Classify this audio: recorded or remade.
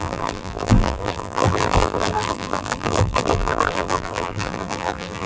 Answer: remade